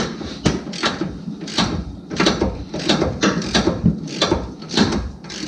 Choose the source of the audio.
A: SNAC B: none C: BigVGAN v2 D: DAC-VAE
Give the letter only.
C